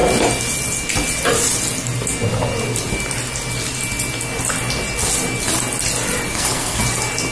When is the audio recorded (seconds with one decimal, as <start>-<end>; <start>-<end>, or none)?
0.0-6.3; 6.8-7.3